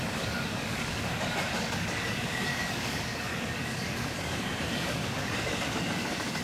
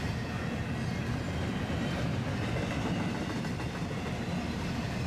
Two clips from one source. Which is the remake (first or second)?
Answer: first